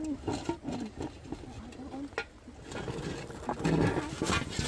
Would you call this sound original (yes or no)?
yes